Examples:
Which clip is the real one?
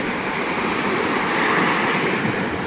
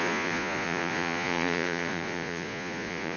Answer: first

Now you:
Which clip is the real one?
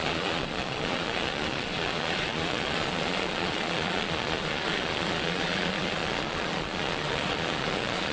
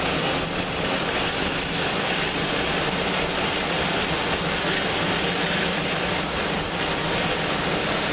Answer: second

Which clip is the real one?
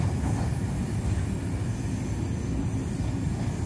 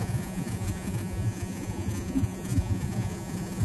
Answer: first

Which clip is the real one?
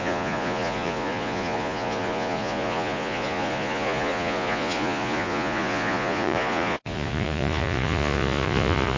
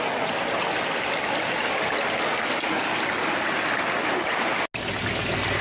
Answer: second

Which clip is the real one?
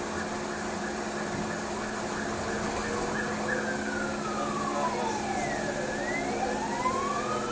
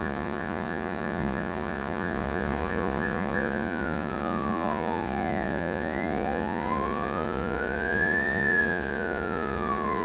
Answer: first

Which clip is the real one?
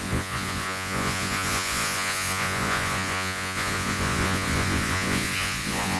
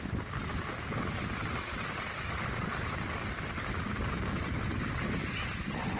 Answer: second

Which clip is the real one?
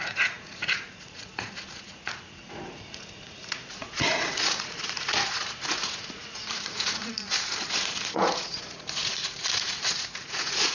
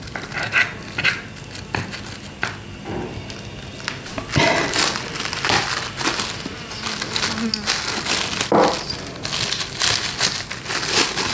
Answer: second